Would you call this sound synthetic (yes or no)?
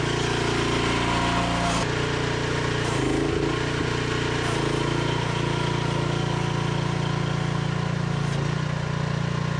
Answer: no